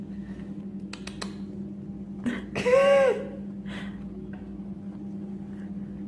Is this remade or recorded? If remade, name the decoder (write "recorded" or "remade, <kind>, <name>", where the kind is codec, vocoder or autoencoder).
recorded